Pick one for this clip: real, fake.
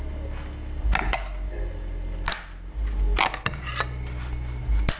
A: real